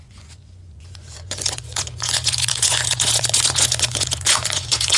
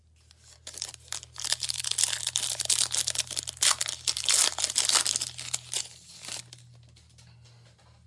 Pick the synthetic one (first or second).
first